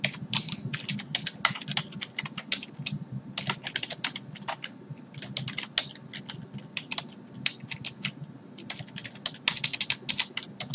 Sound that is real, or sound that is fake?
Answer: real